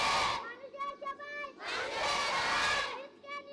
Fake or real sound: real